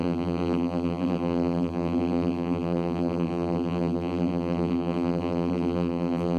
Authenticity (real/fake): fake